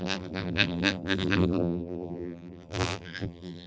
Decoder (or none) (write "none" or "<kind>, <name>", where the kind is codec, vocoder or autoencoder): vocoder, BigVGAN v2